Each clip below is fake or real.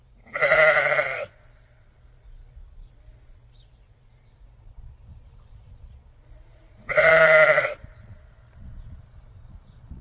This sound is fake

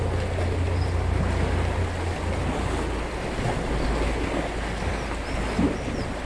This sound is real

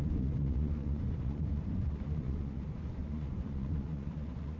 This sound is fake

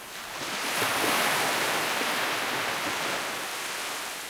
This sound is real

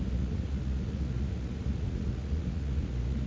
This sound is fake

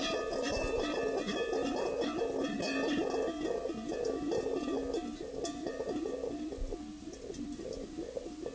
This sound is real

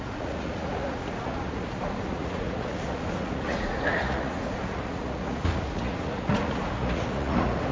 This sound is fake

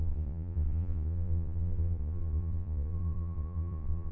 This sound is fake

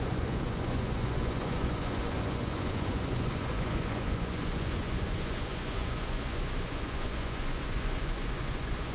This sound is fake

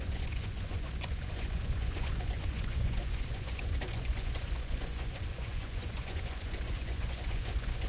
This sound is fake